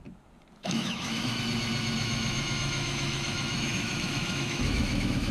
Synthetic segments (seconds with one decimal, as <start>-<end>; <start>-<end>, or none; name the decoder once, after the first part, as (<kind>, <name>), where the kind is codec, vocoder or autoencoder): 0.6-1.4 (autoencoder, DAC-VAE); 2.0-5.3